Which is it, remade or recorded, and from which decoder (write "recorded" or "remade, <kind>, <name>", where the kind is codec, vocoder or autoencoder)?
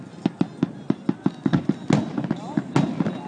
recorded